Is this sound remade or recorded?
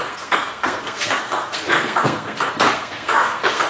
remade